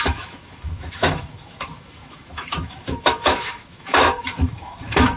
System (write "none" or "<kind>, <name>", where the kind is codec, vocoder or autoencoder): autoencoder, DAC-VAE